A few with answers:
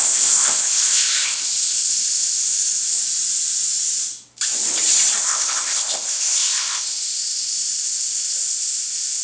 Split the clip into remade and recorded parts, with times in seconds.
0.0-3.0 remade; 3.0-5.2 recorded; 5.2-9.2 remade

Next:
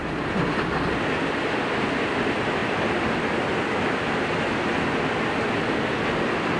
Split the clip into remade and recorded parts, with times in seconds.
0.0-6.6 recorded

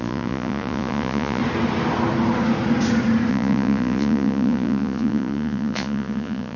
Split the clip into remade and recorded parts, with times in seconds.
0.0-1.4 remade; 1.4-3.3 recorded; 3.3-6.6 remade

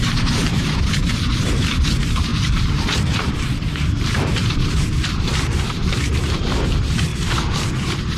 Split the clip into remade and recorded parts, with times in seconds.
0.0-5.8 remade; 5.8-6.4 recorded; 6.4-7.1 remade; 7.1-7.6 recorded; 7.6-8.2 remade

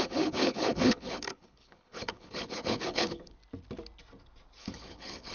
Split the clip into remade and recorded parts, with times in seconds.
0.0-3.4 remade; 3.4-4.6 recorded; 4.6-5.3 remade

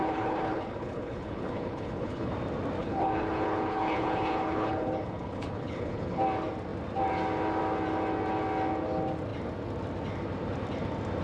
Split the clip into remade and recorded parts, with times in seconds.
0.0-2.3 remade; 2.3-2.8 recorded; 2.8-6.2 remade; 6.2-11.2 recorded

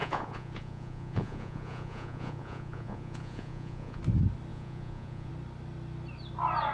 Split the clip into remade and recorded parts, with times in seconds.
0.0-4.0 remade; 4.0-4.5 recorded; 4.5-5.3 remade; 5.3-6.7 recorded

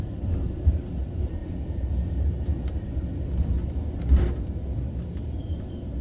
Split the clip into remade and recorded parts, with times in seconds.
0.0-6.0 recorded